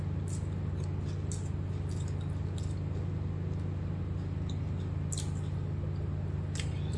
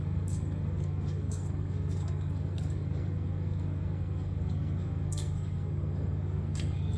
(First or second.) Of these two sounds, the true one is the first